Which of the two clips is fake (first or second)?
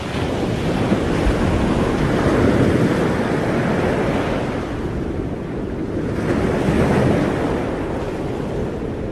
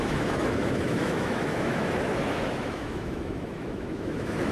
second